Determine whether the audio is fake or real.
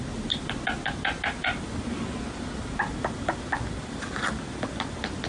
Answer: real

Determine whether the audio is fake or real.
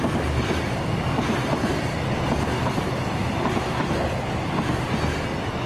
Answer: real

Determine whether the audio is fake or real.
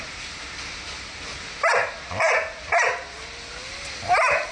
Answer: real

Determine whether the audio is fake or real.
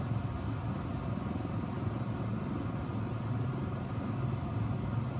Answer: real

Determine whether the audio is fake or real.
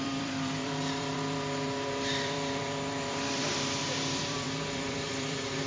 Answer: fake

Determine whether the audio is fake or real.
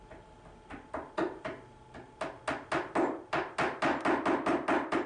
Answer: real